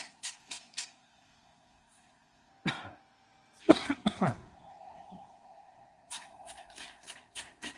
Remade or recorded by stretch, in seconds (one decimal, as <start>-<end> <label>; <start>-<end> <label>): 0.0-2.5 remade; 2.5-3.6 recorded; 3.6-7.8 remade